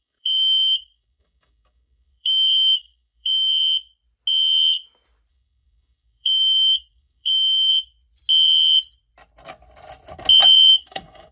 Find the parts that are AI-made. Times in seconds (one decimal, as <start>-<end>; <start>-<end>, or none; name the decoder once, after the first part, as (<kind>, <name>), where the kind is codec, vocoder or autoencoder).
0.0-3.5 (codec, DAC); 5.3-7.7; 10.7-11.3